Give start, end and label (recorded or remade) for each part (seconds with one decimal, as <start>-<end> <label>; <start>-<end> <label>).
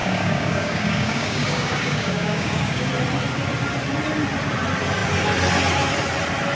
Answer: 0.0-2.9 remade; 2.9-6.5 recorded